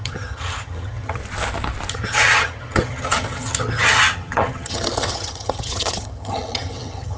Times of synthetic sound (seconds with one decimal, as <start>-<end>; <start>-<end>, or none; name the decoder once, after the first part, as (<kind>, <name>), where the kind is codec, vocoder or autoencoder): 0.0-1.2 (vocoder, HiFi-GAN); 1.9-7.2